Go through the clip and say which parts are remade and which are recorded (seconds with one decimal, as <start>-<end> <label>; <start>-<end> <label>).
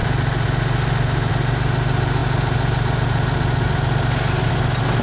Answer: 0.0-5.0 recorded